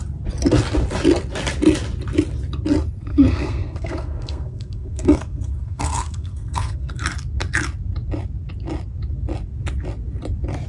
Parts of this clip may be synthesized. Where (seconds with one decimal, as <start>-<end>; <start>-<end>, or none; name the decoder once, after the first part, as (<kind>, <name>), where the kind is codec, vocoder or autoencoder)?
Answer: 3.1-6.9 (codec, SNAC)